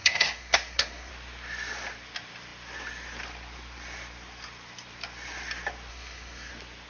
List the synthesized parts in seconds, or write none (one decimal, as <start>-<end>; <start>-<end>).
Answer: 0.0-1.1; 5.9-6.5